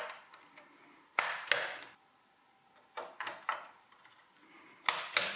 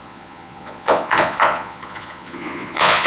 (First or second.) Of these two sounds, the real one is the first